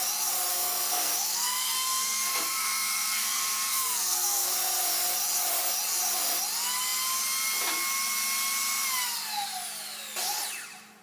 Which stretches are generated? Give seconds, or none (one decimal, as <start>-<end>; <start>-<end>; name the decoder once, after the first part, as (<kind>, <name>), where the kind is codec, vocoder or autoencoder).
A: 0.5-4.5 (codec, SNAC)